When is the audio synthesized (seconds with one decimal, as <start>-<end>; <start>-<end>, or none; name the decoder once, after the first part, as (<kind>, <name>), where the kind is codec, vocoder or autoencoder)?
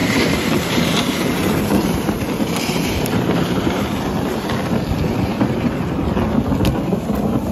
0.0-3.8 (vocoder, BigVGAN v2)